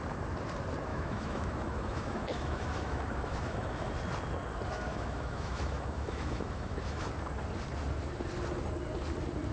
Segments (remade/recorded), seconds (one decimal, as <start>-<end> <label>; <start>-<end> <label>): 0.0-0.9 recorded; 0.9-3.9 remade; 3.9-4.9 recorded; 4.9-7.1 remade; 7.1-9.5 recorded

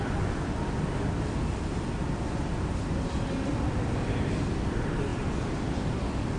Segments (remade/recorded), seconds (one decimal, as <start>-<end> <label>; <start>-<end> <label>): 0.0-6.4 recorded

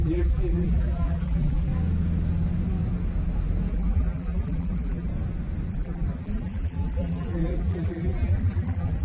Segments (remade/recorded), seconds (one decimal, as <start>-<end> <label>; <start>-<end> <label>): 0.0-1.7 remade; 1.7-3.7 recorded; 3.7-5.1 remade; 5.1-5.7 recorded; 5.7-9.0 remade

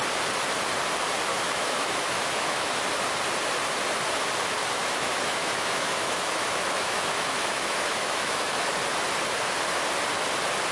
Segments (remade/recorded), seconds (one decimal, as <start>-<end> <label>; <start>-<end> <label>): 0.0-1.3 recorded; 1.3-2.7 remade; 2.7-4.8 recorded; 4.8-8.7 remade; 8.7-10.7 recorded